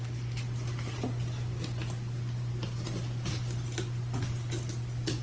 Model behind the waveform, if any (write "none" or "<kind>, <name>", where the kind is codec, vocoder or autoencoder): none